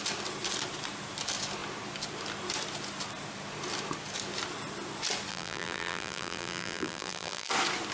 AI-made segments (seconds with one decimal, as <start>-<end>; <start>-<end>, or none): 5.3-7.5